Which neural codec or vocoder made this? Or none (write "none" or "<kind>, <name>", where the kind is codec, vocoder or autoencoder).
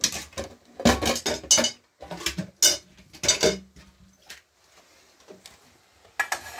none